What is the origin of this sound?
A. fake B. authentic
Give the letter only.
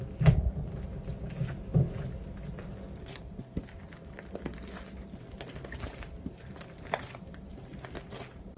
B